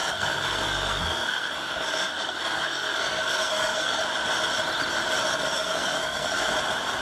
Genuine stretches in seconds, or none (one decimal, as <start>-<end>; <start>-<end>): 4.0-5.3; 6.5-7.0